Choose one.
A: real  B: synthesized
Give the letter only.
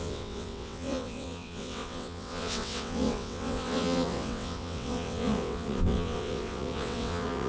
B